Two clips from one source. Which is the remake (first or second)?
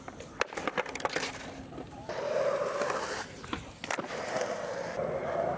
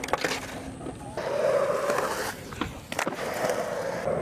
first